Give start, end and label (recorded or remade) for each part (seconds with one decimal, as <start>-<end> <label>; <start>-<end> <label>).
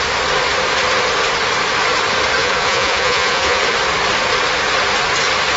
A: 0.0-2.4 recorded; 2.4-3.6 remade; 3.6-5.6 recorded